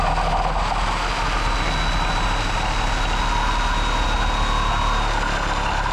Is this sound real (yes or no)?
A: yes